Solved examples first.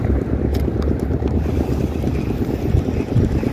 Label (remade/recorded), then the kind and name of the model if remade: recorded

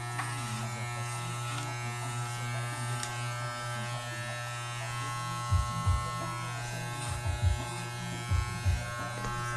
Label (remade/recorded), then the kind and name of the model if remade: recorded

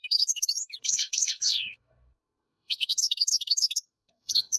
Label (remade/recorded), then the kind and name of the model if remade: remade, codec, SNAC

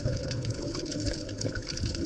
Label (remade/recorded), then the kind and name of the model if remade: remade, codec, HILCodec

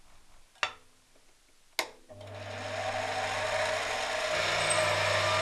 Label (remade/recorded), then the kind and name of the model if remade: recorded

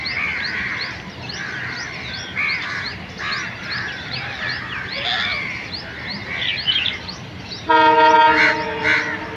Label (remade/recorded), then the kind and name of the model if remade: recorded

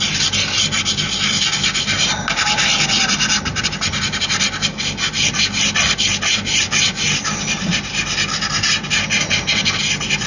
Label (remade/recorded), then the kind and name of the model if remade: recorded